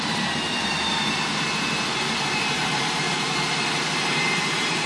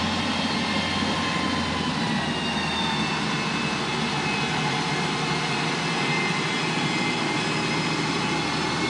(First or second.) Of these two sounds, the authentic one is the second